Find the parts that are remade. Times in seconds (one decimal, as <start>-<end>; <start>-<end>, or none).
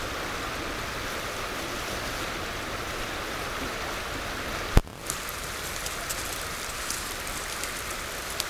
none